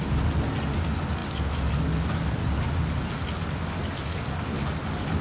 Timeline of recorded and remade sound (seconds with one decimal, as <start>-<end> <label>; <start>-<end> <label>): 0.0-5.2 recorded